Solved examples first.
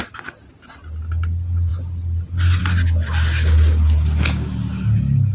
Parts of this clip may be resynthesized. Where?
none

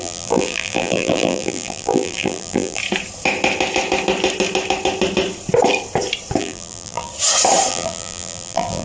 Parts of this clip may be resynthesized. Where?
0.0-2.8; 6.4-7.1; 7.7-8.8